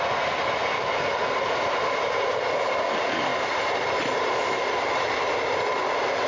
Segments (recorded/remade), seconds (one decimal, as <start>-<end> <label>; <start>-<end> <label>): 0.0-6.3 recorded